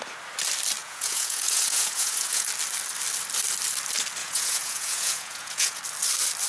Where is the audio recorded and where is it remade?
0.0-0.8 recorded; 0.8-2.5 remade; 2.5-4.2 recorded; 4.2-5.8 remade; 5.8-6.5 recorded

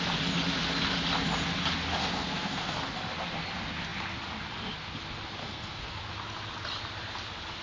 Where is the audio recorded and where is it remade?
0.0-2.0 recorded; 2.0-2.8 remade; 2.8-5.4 recorded; 5.4-6.0 remade; 6.0-7.6 recorded

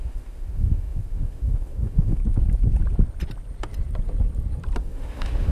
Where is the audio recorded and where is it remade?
0.0-2.2 remade; 2.2-4.8 recorded; 4.8-5.5 remade

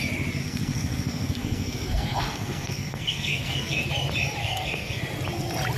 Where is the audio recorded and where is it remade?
0.0-0.4 recorded; 0.4-3.9 remade; 3.9-4.4 recorded; 4.4-5.0 remade; 5.0-5.8 recorded

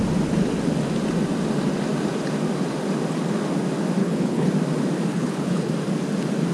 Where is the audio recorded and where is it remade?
0.0-4.0 recorded; 4.0-4.5 remade; 4.5-5.1 recorded; 5.1-5.7 remade; 5.7-6.5 recorded

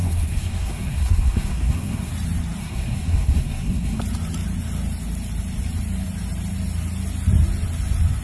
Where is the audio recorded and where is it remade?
0.0-2.1 remade; 2.1-2.6 recorded; 2.6-4.0 remade; 4.0-8.2 recorded

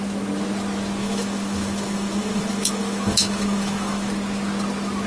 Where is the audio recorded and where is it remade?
0.0-1.0 recorded; 1.0-4.1 remade; 4.1-5.1 recorded

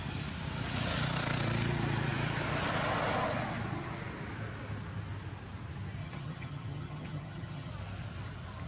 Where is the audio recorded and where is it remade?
0.0-6.0 recorded; 6.0-7.7 remade; 7.7-8.7 recorded